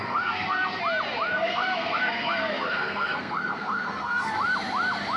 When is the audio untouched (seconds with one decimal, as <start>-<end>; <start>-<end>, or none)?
0.8-1.3; 4.4-5.2